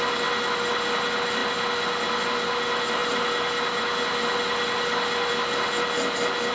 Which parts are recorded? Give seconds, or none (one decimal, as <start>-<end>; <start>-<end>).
0.0-6.5